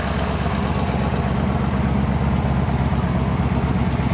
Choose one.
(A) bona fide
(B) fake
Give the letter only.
A